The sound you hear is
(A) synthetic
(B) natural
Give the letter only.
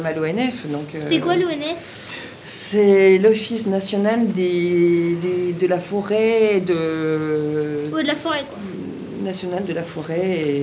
B